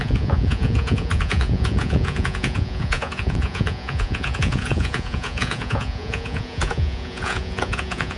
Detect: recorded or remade remade